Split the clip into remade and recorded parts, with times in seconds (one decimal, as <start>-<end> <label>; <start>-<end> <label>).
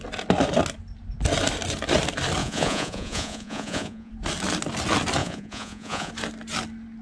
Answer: 0.0-2.4 recorded; 2.4-4.1 remade; 4.1-5.2 recorded; 5.2-6.1 remade; 6.1-7.0 recorded